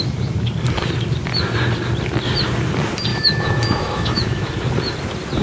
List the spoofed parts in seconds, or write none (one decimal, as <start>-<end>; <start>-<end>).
3.1-4.5